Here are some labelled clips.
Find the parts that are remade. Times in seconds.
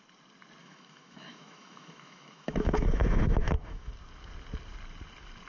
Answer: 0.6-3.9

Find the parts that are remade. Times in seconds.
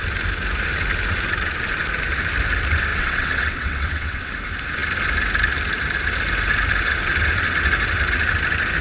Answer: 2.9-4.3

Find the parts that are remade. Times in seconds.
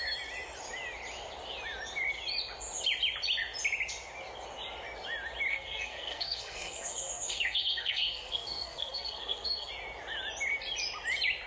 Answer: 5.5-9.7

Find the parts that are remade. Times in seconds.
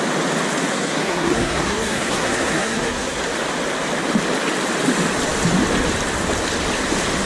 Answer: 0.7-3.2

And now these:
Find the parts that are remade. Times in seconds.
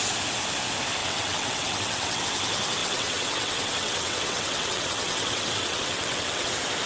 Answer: 1.0-2.2; 2.8-6.5